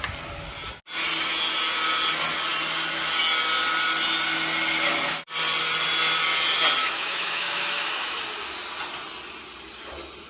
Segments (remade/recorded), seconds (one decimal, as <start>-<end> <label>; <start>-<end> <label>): 0.0-6.8 recorded; 6.8-8.2 remade; 8.2-10.3 recorded